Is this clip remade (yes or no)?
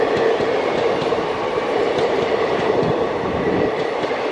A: yes